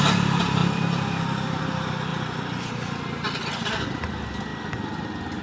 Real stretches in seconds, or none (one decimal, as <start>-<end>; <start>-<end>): 0.0-5.4